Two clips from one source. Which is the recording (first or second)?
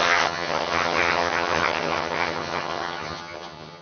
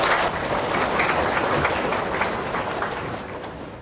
second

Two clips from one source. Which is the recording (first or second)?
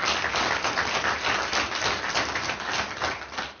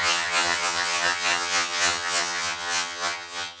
first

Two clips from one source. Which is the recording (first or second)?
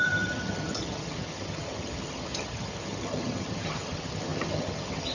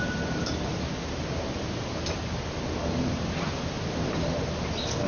second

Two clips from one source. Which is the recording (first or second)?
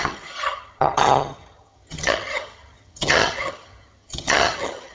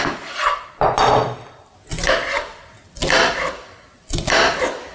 second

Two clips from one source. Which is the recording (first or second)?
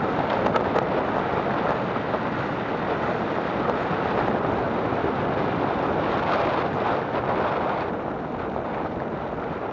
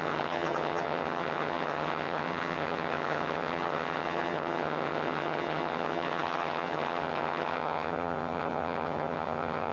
first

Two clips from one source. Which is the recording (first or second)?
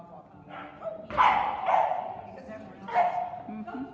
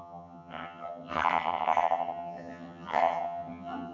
first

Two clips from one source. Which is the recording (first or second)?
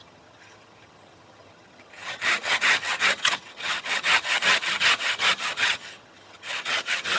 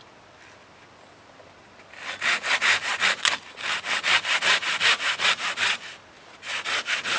second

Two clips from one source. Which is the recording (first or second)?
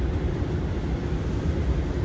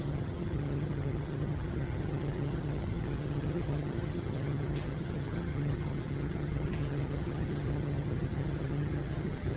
first